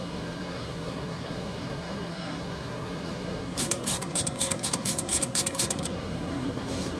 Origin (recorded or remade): remade